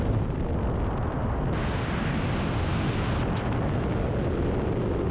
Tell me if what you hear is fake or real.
real